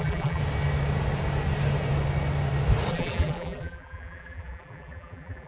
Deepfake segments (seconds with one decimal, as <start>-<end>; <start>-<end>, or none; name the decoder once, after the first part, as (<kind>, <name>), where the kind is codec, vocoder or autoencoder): 0.0-0.4 (vocoder, BigVGAN v2); 2.9-5.5